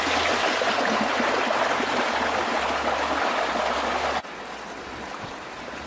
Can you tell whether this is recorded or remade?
recorded